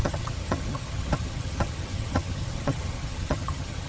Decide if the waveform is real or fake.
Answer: fake